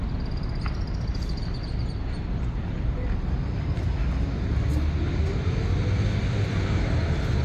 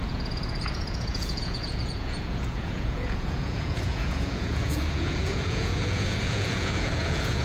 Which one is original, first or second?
first